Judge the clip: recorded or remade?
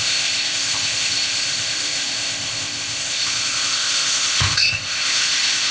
remade